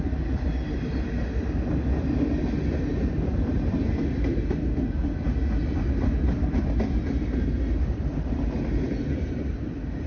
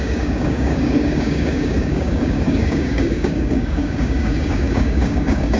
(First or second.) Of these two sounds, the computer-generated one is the second